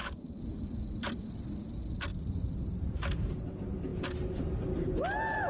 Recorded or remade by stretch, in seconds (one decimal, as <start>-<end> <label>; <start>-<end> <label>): 0.0-1.3 remade; 1.3-2.1 recorded; 2.1-3.3 remade; 3.3-5.5 recorded